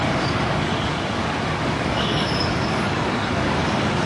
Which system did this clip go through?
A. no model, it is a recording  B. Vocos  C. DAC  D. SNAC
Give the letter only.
C